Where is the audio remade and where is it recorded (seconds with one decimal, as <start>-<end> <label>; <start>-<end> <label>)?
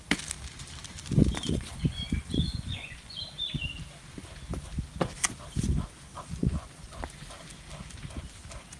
0.0-1.2 recorded; 1.2-3.2 remade; 3.2-6.4 recorded; 6.4-7.0 remade; 7.0-8.8 recorded